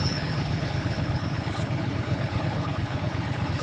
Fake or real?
fake